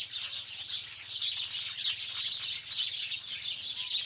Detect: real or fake real